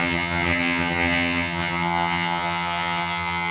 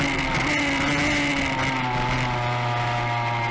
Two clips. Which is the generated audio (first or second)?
first